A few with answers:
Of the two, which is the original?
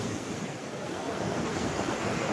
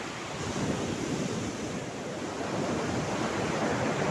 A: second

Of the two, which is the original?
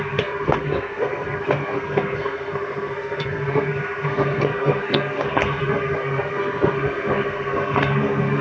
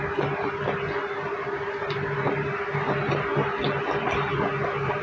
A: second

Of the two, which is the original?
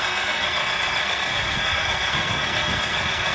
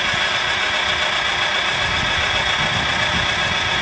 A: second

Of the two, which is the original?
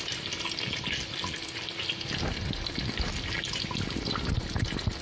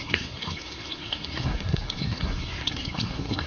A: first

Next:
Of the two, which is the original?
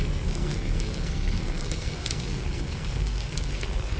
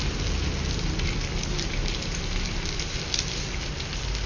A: second